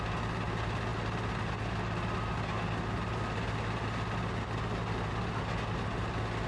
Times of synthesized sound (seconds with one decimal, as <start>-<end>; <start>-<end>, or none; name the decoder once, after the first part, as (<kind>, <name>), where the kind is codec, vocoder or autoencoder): none